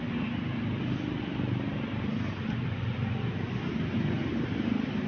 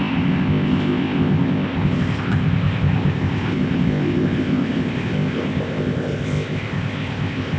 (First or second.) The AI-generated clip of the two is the second